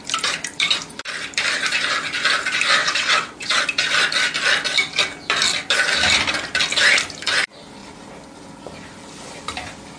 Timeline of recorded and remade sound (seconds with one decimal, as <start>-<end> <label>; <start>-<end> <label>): 0.0-2.8 recorded; 2.8-3.6 remade; 3.6-10.0 recorded